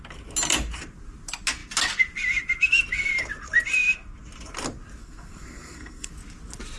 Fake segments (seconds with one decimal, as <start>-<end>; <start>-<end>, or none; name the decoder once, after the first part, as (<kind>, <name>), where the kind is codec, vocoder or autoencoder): 5.0-6.1 (codec, SNAC)

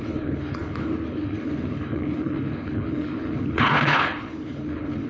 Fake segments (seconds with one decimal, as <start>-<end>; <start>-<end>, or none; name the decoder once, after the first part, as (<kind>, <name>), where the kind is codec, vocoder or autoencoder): 0.0-5.1 (codec, HILCodec)

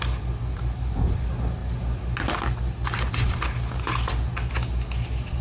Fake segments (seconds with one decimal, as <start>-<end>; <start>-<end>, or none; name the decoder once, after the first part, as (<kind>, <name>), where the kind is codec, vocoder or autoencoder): none

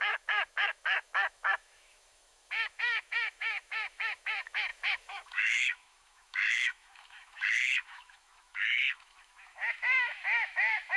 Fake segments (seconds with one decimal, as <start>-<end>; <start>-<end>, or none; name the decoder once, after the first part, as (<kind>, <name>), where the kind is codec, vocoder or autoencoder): 0.0-11.0 (autoencoder, DAC-VAE)

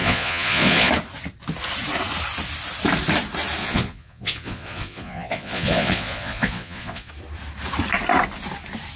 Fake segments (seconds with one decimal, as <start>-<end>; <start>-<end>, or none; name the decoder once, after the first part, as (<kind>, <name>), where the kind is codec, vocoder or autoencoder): 0.0-0.9 (vocoder, Vocos); 3.6-7.1

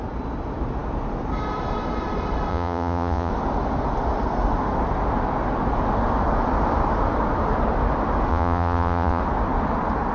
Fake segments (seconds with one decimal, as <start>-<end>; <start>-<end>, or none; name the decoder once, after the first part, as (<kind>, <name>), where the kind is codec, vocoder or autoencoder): 2.5-3.3 (vocoder, Vocos); 8.3-9.2